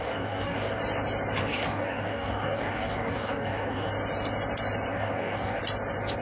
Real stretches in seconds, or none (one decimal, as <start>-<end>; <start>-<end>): 0.8-1.4; 3.9-4.9; 5.6-6.2